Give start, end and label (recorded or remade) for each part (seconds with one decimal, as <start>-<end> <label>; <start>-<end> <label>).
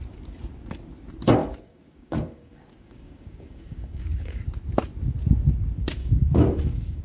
0.0-1.4 recorded; 1.4-4.5 remade; 4.5-6.0 recorded; 6.0-7.0 remade